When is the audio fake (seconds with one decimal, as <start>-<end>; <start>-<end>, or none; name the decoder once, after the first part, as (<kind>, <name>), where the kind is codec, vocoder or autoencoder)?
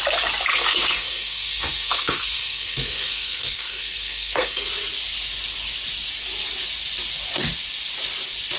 0.5-4.7 (codec, SNAC)